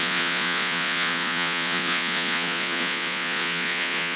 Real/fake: fake